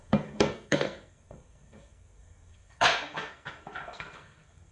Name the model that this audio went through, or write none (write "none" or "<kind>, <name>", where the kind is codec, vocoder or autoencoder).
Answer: codec, SNAC